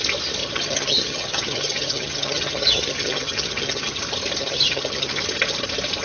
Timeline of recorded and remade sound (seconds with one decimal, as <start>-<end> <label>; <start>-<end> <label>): 0.0-0.4 recorded; 0.4-4.0 remade; 4.0-4.4 recorded; 4.4-5.2 remade; 5.2-6.0 recorded